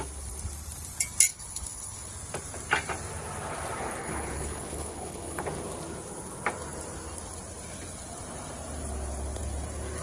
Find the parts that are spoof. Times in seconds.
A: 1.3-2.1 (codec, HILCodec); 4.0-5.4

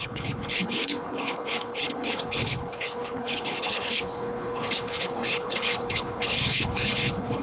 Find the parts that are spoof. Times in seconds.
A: 0.0-7.4 (codec, HILCodec)

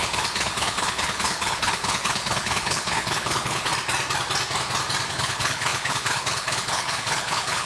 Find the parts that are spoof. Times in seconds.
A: 0.0-3.7 (codec, HILCodec); 5.1-7.7

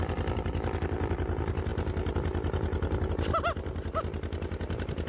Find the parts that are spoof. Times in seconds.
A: none